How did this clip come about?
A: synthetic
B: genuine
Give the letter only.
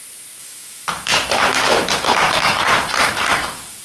A